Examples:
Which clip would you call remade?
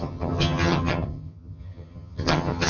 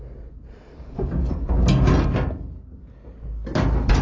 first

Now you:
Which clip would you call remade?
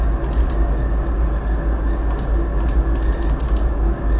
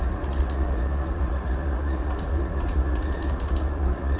second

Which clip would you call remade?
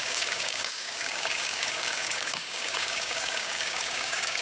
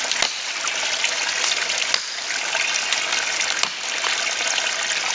first